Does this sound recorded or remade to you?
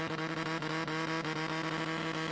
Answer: recorded